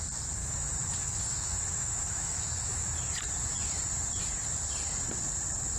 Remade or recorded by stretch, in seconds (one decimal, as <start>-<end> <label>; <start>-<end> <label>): 0.0-0.4 recorded; 0.4-3.1 remade; 3.1-5.8 recorded